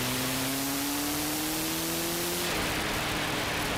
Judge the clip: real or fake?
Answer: real